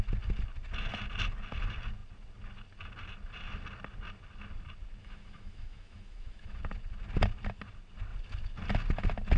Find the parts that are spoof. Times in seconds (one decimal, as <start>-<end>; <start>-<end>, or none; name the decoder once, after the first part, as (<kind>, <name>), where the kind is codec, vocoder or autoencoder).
5.0-6.6 (autoencoder, DAC-VAE)